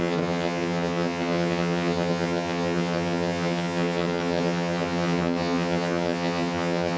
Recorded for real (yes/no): no